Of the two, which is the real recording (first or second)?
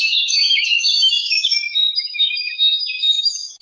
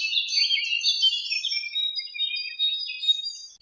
second